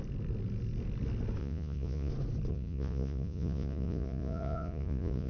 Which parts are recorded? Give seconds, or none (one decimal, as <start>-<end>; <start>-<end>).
0.0-1.4; 2.1-2.5

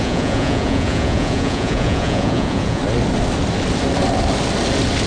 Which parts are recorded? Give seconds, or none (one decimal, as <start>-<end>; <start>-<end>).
2.8-5.1

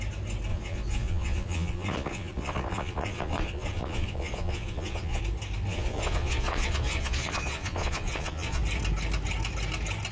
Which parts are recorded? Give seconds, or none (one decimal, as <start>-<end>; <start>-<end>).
0.0-0.5; 5.2-5.7; 8.6-10.1